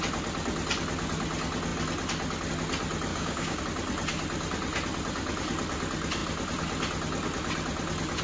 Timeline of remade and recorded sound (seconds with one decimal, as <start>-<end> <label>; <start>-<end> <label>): 0.0-3.1 recorded; 3.1-3.6 remade; 3.6-8.2 recorded